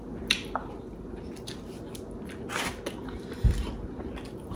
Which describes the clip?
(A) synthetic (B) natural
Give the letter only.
B